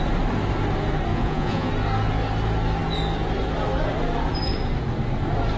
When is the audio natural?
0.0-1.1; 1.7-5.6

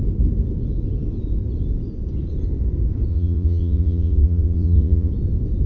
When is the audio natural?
0.0-3.1; 5.1-5.7

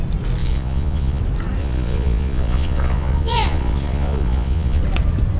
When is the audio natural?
0.0-0.4; 1.2-1.6; 4.8-5.4

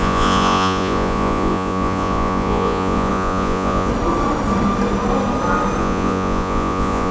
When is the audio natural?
3.9-5.8

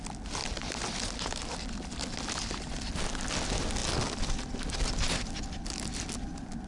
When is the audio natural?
0.0-6.7